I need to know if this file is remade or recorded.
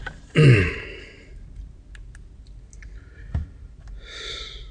recorded